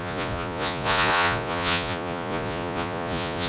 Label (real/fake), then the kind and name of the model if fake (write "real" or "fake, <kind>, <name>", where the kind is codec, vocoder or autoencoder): fake, vocoder, Vocos